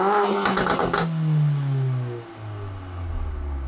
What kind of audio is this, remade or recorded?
recorded